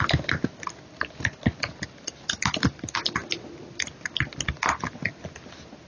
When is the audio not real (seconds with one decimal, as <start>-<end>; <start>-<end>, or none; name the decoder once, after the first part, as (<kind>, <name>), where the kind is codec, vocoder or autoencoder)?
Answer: none